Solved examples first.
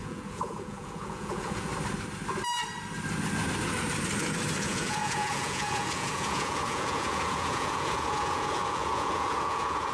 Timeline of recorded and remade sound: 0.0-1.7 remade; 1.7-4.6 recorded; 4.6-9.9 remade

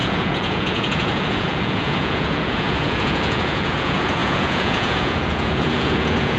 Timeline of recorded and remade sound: 0.0-6.4 remade

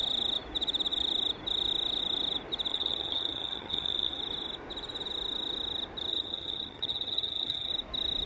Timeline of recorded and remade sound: 0.0-2.7 recorded; 2.7-4.2 remade; 4.2-6.1 recorded; 6.1-7.7 remade; 7.7-8.3 recorded